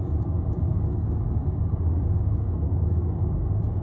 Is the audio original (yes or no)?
no